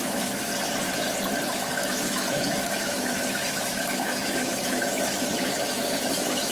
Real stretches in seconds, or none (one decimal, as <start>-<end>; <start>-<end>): 0.5-1.5